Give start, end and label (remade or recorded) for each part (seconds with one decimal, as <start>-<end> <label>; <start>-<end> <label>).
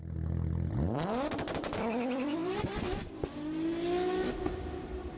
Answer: 0.0-5.2 recorded